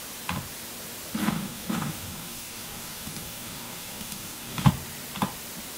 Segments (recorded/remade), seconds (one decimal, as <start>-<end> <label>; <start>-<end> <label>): 0.0-1.2 recorded; 1.2-4.7 remade; 4.7-5.8 recorded